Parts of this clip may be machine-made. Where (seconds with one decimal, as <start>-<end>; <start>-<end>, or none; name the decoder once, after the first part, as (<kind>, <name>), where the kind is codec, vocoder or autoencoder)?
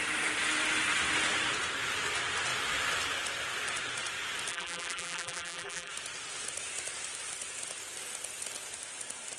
4.5-5.9 (vocoder, BigVGAN v2)